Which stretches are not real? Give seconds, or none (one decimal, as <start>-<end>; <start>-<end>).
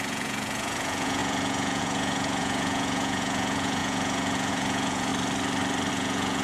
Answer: 0.0-5.1; 5.9-6.4